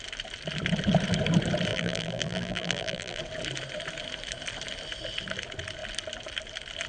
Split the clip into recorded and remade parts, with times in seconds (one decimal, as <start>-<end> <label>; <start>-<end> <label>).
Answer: 0.0-1.7 recorded; 1.7-3.2 remade; 3.2-6.9 recorded